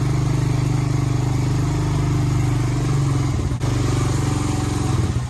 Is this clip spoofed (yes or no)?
no